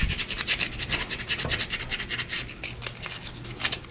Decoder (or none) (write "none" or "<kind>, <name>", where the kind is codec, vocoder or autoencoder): none